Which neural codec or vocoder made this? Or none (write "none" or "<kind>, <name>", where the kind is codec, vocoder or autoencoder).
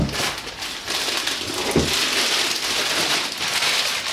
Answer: none